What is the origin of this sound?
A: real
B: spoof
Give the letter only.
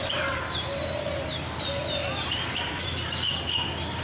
A